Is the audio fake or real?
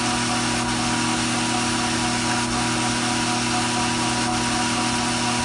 real